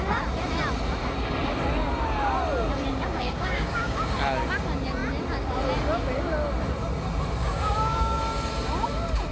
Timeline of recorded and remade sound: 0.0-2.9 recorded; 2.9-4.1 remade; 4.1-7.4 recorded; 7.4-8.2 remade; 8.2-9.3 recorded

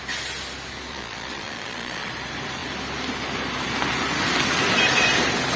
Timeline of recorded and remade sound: 0.0-0.9 recorded; 0.9-2.1 remade; 2.1-5.6 recorded

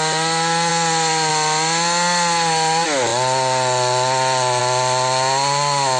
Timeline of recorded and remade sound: 0.0-6.0 recorded